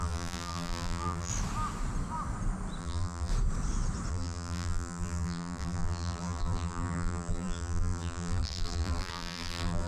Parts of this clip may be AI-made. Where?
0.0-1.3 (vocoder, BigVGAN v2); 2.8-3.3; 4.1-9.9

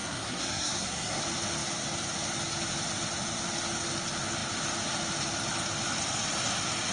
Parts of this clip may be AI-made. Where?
0.0-1.2 (codec, SNAC)

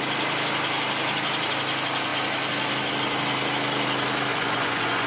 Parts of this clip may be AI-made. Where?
4.3-5.1 (vocoder, Vocos)